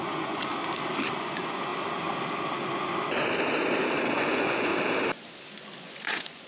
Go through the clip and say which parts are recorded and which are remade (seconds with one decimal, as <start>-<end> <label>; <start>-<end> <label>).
0.0-0.5 remade; 0.5-1.2 recorded; 1.2-1.7 remade; 1.7-4.1 recorded; 4.1-4.7 remade; 4.7-5.5 recorded; 5.5-6.5 remade